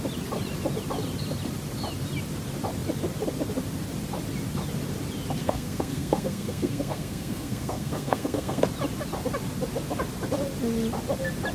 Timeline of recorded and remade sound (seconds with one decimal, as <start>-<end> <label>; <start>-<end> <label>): 0.0-5.4 recorded; 5.4-8.6 remade; 8.6-11.5 recorded